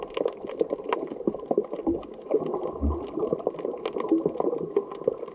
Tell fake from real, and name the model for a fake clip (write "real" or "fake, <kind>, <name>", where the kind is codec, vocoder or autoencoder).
real